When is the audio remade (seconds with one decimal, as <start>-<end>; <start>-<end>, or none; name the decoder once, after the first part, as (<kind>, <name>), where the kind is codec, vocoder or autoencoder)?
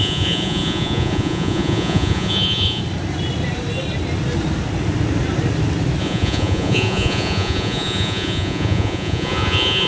0.0-2.8 (vocoder, Vocos); 6.0-9.9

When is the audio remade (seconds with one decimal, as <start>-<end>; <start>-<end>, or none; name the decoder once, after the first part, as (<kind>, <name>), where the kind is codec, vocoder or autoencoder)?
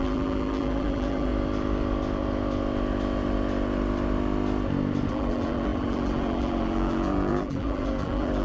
0.0-1.3 (vocoder, BigVGAN v2); 5.1-8.4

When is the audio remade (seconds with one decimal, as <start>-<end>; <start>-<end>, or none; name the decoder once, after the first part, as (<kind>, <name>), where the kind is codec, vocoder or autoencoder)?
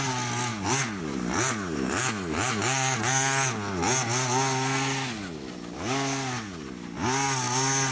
none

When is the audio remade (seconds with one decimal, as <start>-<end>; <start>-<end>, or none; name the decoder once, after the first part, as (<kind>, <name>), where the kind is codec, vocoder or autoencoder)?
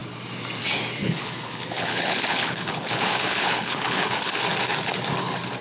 1.0-4.4 (codec, HILCodec)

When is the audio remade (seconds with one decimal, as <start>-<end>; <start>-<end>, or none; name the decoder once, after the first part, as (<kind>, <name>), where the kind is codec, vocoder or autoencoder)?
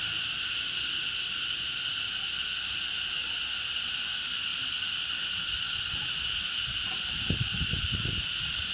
none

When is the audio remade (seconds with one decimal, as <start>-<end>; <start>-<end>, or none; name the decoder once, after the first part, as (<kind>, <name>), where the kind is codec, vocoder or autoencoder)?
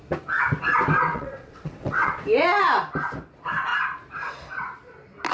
1.1-2.2 (vocoder, WaveNeXt)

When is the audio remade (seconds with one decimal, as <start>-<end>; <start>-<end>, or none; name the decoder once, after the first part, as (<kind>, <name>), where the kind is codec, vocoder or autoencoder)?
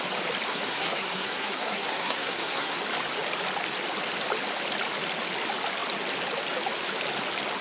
0.5-2.8 (codec, SNAC)